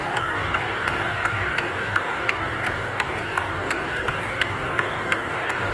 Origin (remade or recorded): remade